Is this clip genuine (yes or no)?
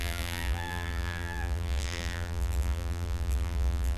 no